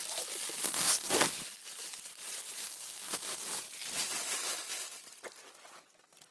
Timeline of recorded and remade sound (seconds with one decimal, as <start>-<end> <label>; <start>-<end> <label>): 0.0-0.6 recorded; 0.6-1.1 remade; 1.1-2.6 recorded; 2.6-3.4 remade; 3.4-6.3 recorded